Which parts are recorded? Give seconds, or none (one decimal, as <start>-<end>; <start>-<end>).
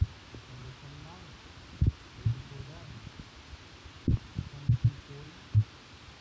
0.0-6.2